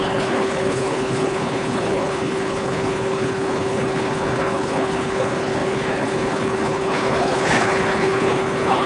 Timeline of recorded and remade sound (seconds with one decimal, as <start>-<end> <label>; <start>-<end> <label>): 0.0-8.9 remade